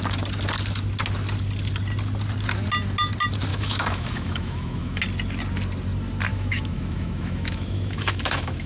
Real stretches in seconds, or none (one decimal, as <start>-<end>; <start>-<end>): 0.0-3.5; 5.0-6.3